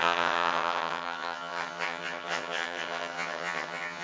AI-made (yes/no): yes